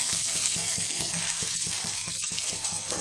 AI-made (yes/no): yes